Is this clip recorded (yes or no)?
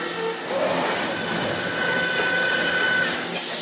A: yes